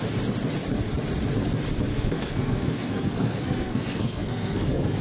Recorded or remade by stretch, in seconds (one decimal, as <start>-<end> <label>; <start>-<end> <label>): 0.0-1.9 recorded; 1.9-5.0 remade